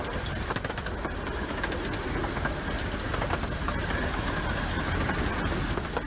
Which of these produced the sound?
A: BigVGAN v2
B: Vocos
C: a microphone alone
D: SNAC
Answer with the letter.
C